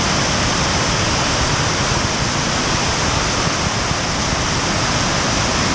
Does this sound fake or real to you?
real